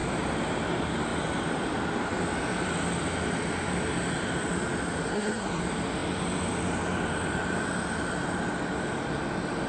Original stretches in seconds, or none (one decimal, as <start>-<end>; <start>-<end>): 0.0-5.1; 5.6-9.7